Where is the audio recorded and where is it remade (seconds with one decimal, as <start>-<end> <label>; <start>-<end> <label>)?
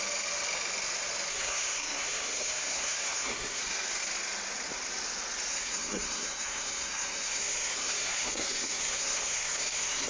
0.0-1.3 recorded; 1.3-3.6 remade; 3.6-5.5 recorded; 5.5-10.1 remade